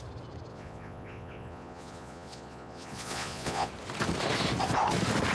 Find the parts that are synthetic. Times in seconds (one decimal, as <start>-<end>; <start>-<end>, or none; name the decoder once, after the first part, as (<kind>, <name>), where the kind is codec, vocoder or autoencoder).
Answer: 0.5-3.7 (vocoder, Vocos)